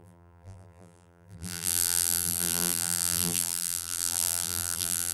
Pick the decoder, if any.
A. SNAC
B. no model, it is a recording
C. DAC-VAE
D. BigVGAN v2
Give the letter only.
D